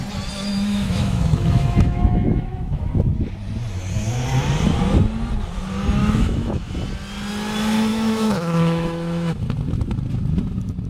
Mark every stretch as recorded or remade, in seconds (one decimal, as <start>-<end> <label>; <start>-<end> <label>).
0.0-0.5 recorded; 0.5-2.9 remade; 2.9-6.0 recorded; 6.0-6.7 remade; 6.7-7.9 recorded; 7.9-9.4 remade; 9.4-10.9 recorded